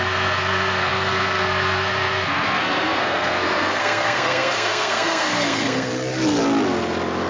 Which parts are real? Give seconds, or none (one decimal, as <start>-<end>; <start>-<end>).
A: 5.9-7.3